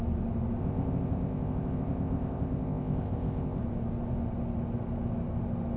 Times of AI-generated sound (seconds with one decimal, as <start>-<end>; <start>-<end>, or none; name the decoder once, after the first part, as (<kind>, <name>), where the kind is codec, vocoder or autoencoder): 0.6-3.6 (codec, ZipCodec)